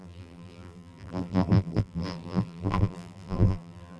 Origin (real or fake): fake